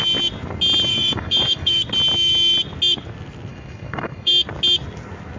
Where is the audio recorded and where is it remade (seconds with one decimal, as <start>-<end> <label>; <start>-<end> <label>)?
0.0-0.9 recorded; 0.9-1.8 remade; 1.8-3.5 recorded; 3.5-4.3 remade; 4.3-5.4 recorded